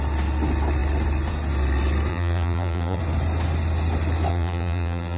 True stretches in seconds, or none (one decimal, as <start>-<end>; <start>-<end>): 0.0-2.1; 3.0-4.3